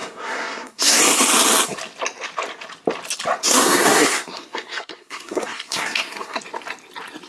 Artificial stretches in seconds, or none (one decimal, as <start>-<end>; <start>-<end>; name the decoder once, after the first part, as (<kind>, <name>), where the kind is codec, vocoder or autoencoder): 0.0-1.0 (codec, SNAC); 3.4-6.4